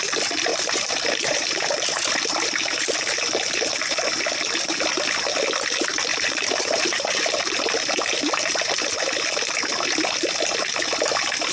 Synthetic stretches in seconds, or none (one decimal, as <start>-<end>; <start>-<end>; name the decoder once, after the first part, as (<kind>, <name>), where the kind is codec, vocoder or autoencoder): 0.5-3.0 (vocoder, BigVGAN v2); 6.1-8.3